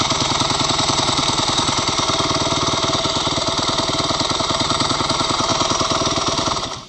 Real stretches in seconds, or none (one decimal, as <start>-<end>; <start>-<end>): 1.2-4.4; 5.5-6.4